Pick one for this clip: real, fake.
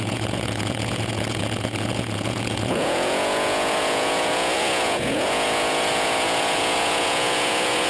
fake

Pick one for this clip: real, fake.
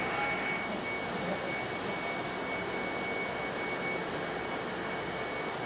real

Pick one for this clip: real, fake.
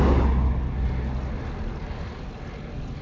real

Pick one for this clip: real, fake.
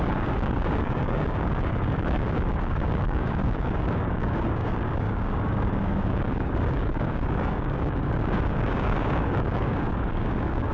fake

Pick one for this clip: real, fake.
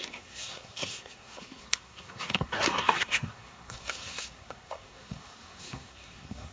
fake